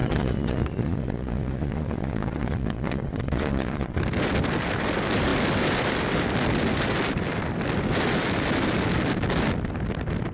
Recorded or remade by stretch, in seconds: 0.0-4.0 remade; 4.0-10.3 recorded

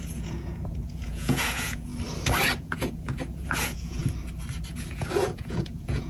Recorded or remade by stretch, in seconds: 0.0-1.9 remade; 1.9-2.6 recorded; 2.6-4.0 remade; 4.0-4.7 recorded; 4.7-6.1 remade

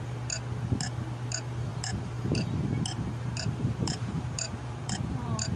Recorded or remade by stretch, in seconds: 0.0-1.7 recorded; 1.7-5.0 remade; 5.0-5.6 recorded